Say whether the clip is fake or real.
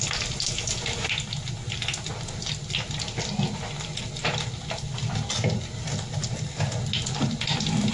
real